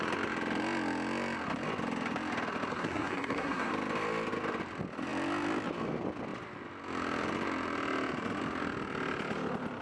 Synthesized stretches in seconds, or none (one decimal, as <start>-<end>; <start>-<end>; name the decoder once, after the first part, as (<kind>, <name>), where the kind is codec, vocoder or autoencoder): 2.7-3.7 (codec, SNAC)